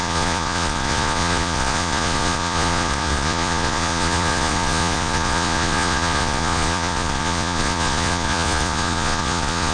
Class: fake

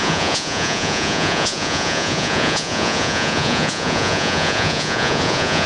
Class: fake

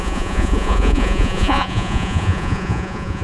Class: fake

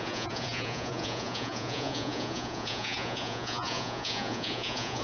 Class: fake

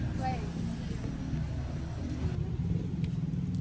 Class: real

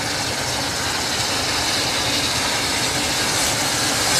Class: real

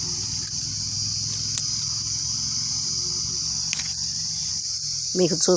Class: real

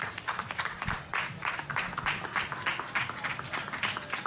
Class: real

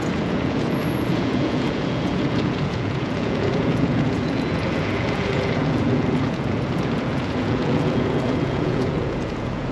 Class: fake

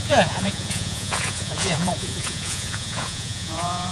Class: fake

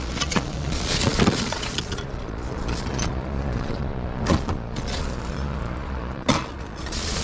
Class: fake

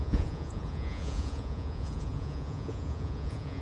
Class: fake